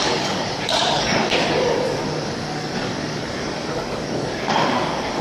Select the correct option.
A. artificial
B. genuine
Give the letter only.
A